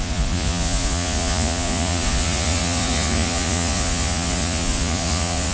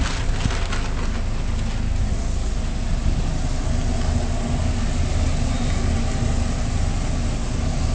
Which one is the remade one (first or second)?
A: first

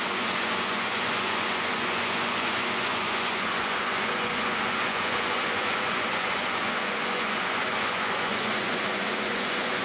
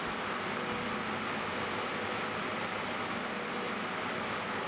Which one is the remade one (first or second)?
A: first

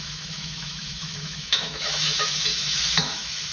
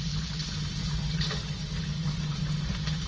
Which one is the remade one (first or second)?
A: first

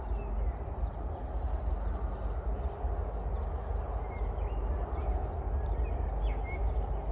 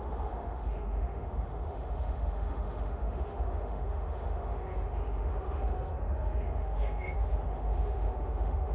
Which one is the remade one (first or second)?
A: second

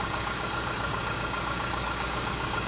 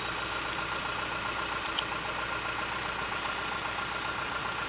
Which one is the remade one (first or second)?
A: first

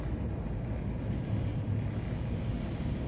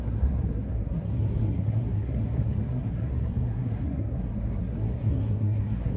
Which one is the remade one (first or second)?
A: second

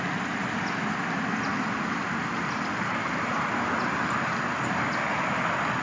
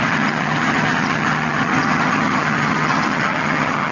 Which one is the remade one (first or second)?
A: second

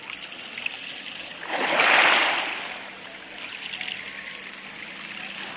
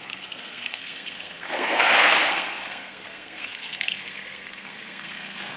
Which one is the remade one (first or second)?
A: second